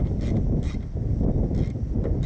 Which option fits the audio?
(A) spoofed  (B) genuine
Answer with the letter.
B